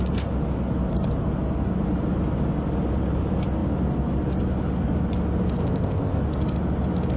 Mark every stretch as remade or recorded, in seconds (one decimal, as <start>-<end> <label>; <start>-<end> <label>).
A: 0.0-5.6 recorded; 5.6-6.2 remade; 6.2-7.2 recorded